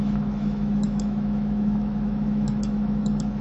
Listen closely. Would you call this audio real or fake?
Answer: fake